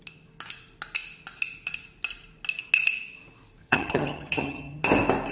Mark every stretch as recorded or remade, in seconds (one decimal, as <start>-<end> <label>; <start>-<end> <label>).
0.0-3.6 recorded; 3.6-4.8 remade; 4.8-5.3 recorded

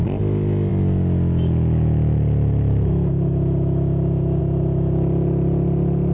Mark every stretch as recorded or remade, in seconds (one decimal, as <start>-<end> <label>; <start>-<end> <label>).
0.0-6.1 recorded

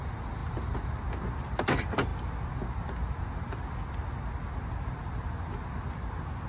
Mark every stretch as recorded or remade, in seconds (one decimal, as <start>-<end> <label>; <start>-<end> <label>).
0.0-6.5 recorded